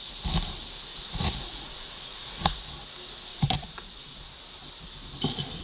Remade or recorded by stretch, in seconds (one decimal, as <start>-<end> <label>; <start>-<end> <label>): 0.0-0.9 recorded; 0.9-2.7 remade; 2.7-3.3 recorded; 3.3-4.3 remade; 4.3-5.6 recorded